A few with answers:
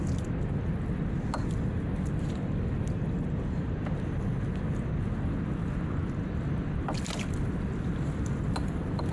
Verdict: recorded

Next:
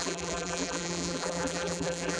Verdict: remade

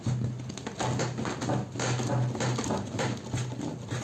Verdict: recorded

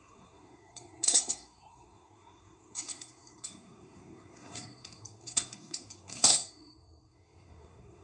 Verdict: remade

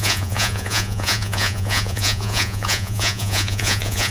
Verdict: remade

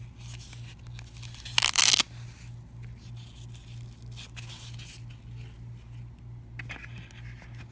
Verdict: recorded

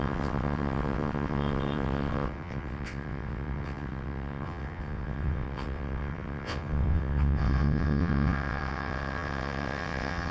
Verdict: remade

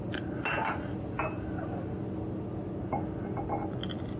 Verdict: recorded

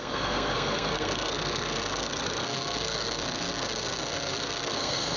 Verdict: remade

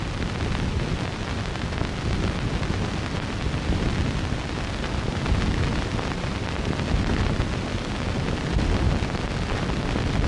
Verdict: remade